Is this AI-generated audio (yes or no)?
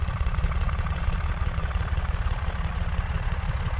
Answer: yes